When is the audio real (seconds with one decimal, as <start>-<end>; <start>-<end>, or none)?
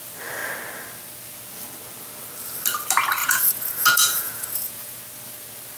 0.0-3.2; 5.0-5.8